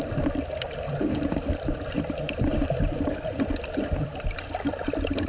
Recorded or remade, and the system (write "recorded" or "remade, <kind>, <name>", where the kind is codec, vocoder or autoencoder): remade, vocoder, BigVGAN v2